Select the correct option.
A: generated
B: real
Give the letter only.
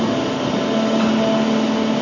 B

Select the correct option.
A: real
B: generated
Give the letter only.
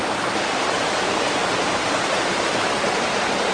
B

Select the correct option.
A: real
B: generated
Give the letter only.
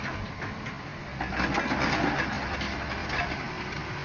A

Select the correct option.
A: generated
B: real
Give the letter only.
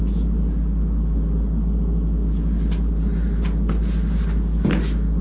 B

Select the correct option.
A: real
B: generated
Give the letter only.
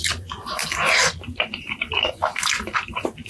B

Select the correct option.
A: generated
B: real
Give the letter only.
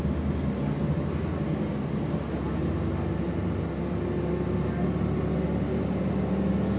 B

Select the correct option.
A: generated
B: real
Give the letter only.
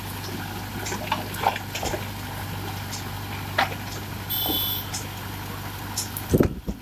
B